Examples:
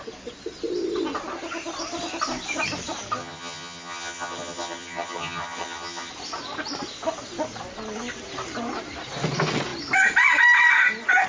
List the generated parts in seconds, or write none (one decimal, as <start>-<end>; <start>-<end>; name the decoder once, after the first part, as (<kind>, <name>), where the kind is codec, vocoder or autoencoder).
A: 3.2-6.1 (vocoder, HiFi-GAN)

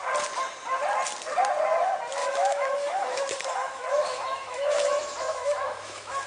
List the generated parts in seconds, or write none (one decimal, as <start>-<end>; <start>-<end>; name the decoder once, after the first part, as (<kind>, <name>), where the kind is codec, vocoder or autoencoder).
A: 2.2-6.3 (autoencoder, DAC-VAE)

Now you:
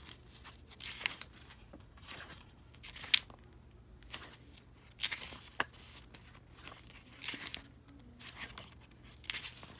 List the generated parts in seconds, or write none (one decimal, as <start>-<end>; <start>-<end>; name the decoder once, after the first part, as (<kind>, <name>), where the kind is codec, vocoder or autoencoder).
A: 1.5-2.6 (vocoder, Vocos)